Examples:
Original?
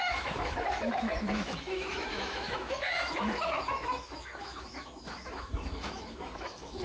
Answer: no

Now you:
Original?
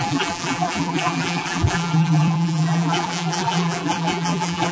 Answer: no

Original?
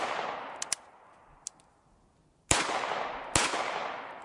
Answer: yes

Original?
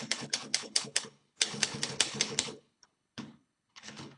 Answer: no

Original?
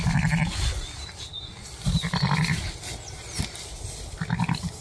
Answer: yes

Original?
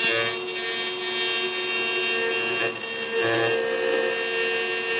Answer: yes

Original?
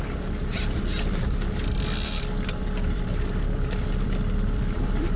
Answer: no